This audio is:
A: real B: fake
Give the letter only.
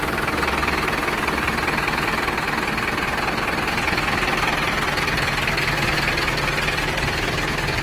A